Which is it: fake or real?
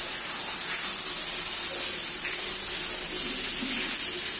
real